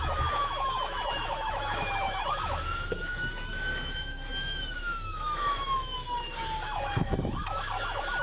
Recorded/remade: remade